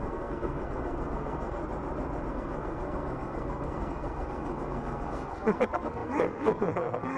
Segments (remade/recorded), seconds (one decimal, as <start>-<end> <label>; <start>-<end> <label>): 0.0-1.6 remade; 1.6-2.3 recorded; 2.3-7.2 remade